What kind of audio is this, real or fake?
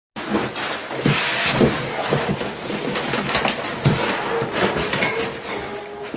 real